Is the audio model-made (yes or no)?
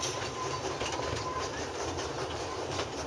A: yes